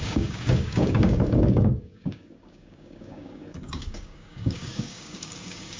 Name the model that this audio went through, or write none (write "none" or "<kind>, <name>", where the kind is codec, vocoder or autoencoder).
codec, DAC